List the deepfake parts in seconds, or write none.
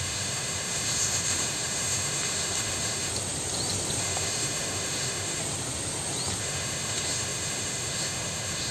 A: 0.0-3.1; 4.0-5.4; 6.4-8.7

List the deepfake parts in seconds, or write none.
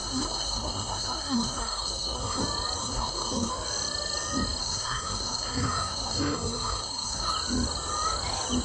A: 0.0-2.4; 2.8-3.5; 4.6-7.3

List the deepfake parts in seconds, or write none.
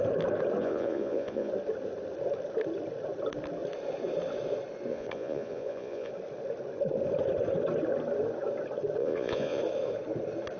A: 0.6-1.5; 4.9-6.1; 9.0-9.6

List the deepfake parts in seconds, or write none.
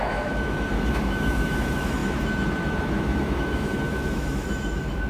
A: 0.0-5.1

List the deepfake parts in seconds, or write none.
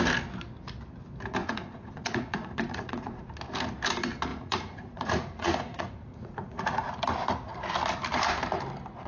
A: 1.4-3.3; 4.3-6.9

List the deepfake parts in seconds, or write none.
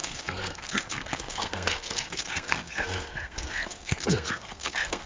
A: 0.0-5.1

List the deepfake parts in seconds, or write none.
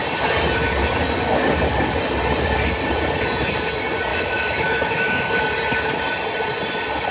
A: 4.1-5.3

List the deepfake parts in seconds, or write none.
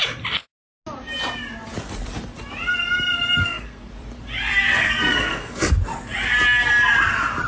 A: 3.4-3.9; 4.8-5.7